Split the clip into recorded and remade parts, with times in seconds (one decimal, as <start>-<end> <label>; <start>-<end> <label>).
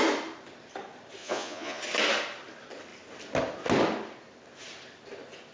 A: 0.0-1.2 recorded; 1.2-1.8 remade; 1.8-5.5 recorded